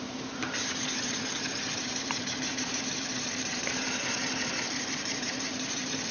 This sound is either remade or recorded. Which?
remade